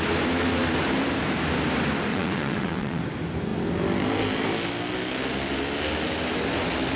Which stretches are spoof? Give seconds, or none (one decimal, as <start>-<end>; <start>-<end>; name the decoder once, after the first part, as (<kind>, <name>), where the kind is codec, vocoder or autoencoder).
2.1-3.0 (vocoder, WaveNeXt)